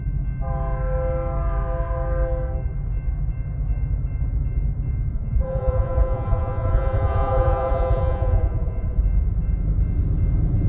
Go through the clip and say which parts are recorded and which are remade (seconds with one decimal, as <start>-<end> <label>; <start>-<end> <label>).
0.0-5.1 recorded; 5.1-9.0 remade; 9.0-10.7 recorded